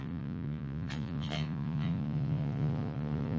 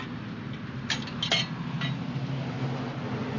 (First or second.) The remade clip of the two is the first